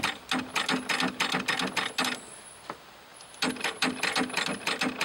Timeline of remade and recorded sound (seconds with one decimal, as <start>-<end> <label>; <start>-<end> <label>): 0.0-3.1 recorded; 3.1-4.0 remade; 4.0-5.0 recorded